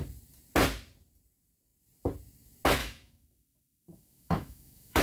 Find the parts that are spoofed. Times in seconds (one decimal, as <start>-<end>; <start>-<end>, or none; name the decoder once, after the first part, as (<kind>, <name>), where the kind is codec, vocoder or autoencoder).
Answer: 2.8-5.0 (autoencoder, DAC-VAE)